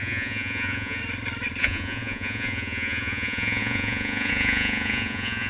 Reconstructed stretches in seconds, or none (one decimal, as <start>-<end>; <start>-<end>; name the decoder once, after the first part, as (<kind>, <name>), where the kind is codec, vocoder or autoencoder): 0.0-1.0 (vocoder, Vocos); 1.6-5.5